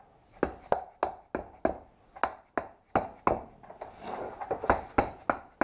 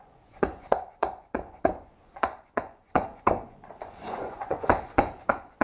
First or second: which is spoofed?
second